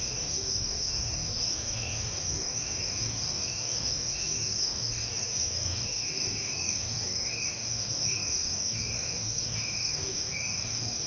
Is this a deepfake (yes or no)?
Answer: yes